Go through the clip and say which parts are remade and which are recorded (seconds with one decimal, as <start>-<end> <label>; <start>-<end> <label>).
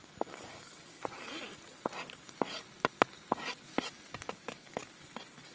0.0-0.5 recorded; 0.5-1.0 remade; 1.0-4.3 recorded; 4.3-4.8 remade; 4.8-5.5 recorded